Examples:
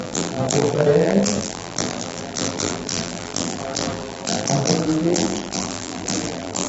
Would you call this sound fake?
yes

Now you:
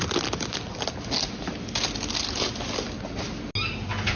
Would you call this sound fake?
no